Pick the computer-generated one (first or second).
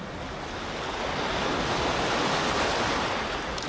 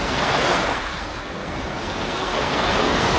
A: second